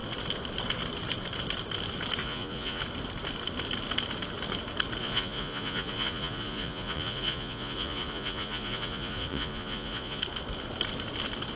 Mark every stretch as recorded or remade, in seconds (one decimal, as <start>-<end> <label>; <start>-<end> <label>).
0.0-2.2 recorded; 2.2-2.8 remade; 2.8-5.0 recorded; 5.0-10.2 remade; 10.2-11.6 recorded